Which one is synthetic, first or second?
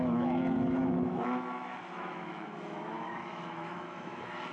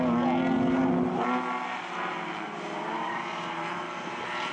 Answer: first